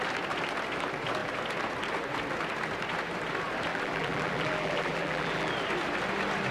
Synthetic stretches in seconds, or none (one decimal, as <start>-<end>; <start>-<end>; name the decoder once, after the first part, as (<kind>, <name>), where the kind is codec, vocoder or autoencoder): 3.7-5.5 (vocoder, BigVGAN v2)